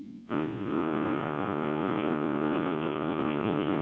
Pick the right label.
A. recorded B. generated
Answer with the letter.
B